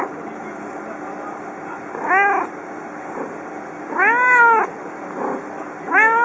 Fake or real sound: real